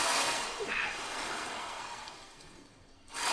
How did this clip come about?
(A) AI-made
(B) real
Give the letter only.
A